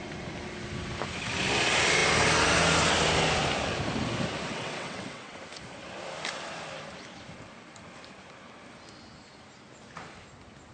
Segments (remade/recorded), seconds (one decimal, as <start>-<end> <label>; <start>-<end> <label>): 0.0-4.5 recorded; 4.5-5.4 remade; 5.4-10.7 recorded